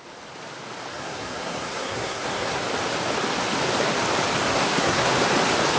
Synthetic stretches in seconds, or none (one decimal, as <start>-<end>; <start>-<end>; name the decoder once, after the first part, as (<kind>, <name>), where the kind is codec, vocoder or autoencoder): 0.9-2.6 (codec, SNAC); 4.5-5.1